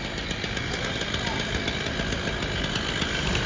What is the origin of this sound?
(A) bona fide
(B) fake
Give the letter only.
A